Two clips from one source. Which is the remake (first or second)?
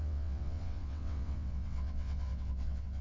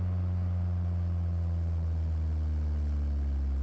first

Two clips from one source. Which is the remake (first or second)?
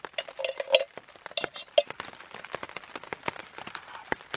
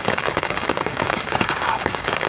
second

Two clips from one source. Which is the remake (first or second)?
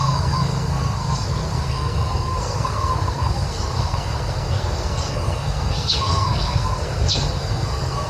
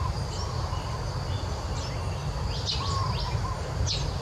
first